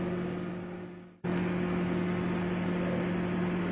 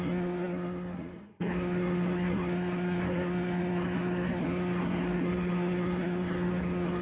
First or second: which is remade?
second